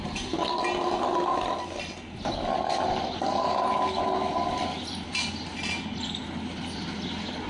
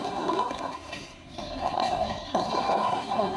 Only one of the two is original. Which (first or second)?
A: first